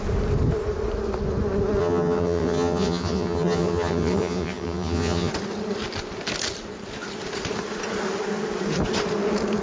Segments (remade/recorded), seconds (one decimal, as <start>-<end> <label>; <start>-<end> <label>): 0.0-1.8 recorded; 1.8-5.3 remade; 5.3-9.6 recorded

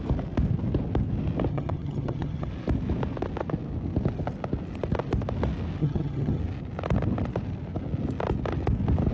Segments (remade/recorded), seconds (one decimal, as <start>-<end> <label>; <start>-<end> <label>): 0.0-1.5 recorded; 1.5-2.5 remade; 2.5-5.8 recorded; 5.8-6.4 remade; 6.4-9.1 recorded

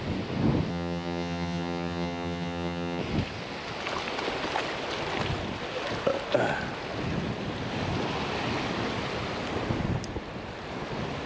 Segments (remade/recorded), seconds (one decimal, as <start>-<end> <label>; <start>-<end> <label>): 0.0-0.7 recorded; 0.7-3.0 remade; 3.0-11.3 recorded

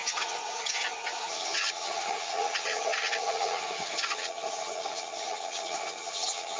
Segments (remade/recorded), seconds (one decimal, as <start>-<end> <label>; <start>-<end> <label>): 0.0-6.6 remade

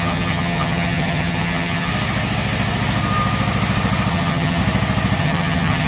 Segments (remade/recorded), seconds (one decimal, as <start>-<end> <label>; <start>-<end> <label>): 0.0-1.9 remade; 1.9-4.1 recorded; 4.1-4.6 remade; 4.6-5.2 recorded; 5.2-5.9 remade

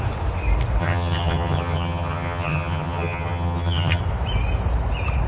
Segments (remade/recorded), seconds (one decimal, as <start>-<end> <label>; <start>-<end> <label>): 0.0-0.8 recorded; 0.8-4.0 remade; 4.0-5.3 recorded

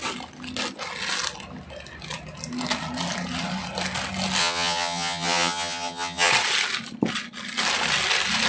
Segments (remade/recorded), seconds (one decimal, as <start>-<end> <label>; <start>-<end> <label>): 0.0-4.4 recorded; 4.4-6.3 remade; 6.3-8.5 recorded